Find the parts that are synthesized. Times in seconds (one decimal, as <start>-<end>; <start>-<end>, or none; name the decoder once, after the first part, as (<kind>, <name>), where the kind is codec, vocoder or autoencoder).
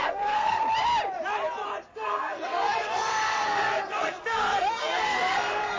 0.0-0.6 (codec, SNAC); 1.9-5.8